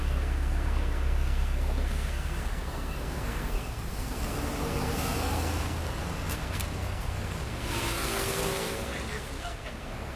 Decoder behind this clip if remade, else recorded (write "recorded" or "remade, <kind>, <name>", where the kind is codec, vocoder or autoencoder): remade, codec, SNAC